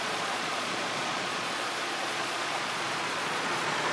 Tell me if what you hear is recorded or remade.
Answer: remade